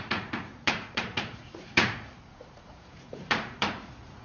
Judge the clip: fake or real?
fake